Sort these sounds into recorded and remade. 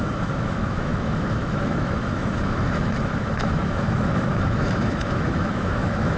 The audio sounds remade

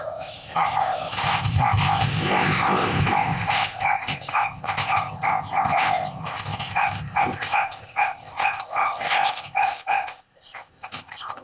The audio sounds remade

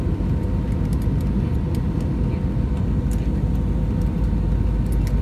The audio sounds recorded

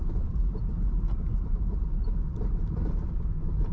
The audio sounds remade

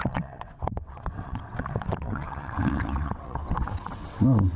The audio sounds remade